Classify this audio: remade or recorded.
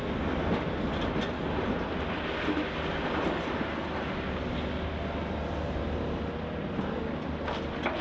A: recorded